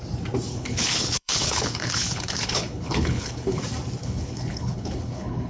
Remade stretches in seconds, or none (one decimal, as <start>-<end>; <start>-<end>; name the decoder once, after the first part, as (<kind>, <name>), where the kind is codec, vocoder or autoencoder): 0.5-3.6 (codec, HILCodec); 4.0-5.5